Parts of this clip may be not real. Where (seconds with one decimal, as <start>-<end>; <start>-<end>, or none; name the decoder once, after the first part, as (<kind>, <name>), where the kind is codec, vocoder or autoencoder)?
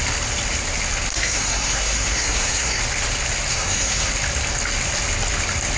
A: 1.1-2.8 (codec, SNAC); 3.5-4.1